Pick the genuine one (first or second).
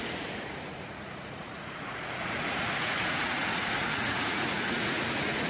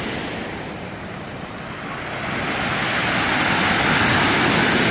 second